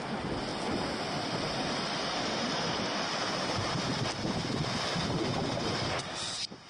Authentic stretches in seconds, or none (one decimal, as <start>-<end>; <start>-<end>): 0.0-6.7